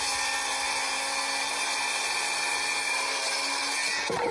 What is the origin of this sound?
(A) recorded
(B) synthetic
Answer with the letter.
A